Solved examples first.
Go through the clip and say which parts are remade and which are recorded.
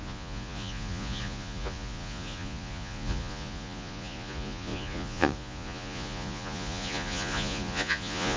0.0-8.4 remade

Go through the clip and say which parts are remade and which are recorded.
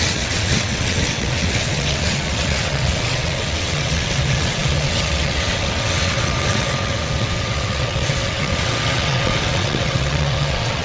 0.0-10.8 remade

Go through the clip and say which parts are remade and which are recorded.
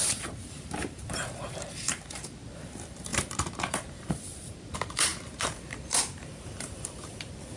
0.0-7.6 remade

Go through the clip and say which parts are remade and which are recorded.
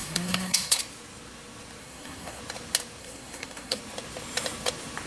0.0-0.8 remade; 0.8-1.8 recorded; 1.8-2.4 remade; 2.4-3.0 recorded; 3.0-3.8 remade; 3.8-5.1 recorded